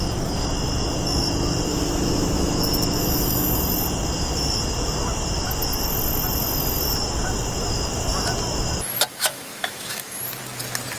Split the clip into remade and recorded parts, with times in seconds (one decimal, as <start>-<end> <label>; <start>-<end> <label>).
0.0-1.7 recorded; 1.7-3.6 remade; 3.6-9.1 recorded; 9.1-10.2 remade; 10.2-11.0 recorded